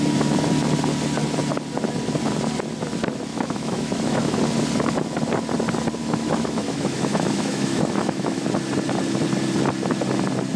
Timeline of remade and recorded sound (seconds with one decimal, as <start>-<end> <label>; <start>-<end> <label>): 0.0-3.3 recorded; 3.3-4.4 remade; 4.4-6.0 recorded; 6.0-8.5 remade; 8.5-10.6 recorded